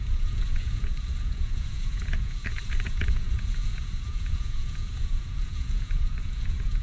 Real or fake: fake